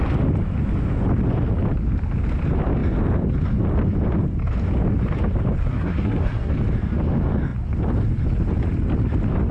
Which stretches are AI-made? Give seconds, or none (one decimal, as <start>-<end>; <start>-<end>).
5.6-6.5